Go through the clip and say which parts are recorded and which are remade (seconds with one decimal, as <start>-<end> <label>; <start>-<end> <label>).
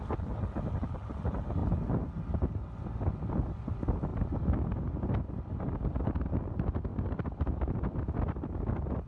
0.0-9.1 recorded